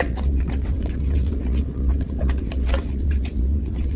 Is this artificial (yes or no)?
yes